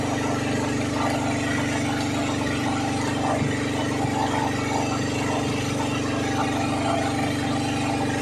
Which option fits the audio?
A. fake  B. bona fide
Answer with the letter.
B